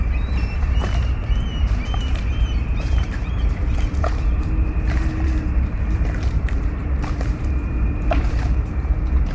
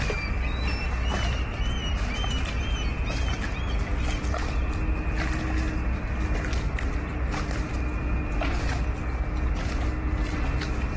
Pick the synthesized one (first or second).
first